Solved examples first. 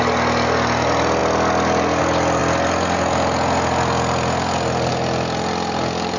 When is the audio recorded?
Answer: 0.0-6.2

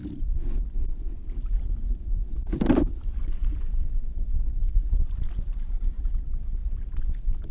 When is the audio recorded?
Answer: 3.4-4.7

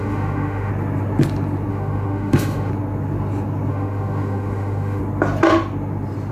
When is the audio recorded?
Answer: 0.7-1.7; 2.7-3.7; 5.0-6.3

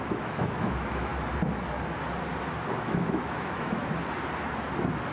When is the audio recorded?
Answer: 1.1-2.7; 3.8-5.1

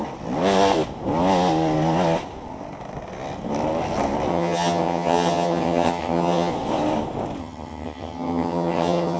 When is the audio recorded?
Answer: 0.0-4.3; 6.5-7.4